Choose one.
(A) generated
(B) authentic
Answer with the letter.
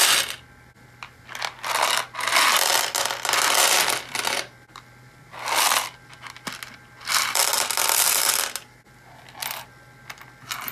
B